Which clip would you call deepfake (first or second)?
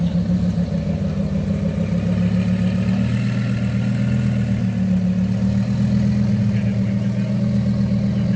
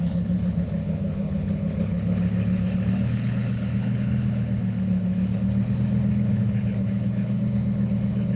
second